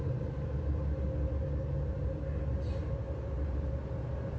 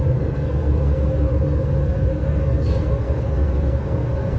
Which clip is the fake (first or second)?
second